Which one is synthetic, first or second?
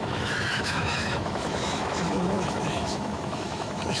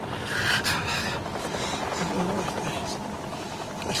first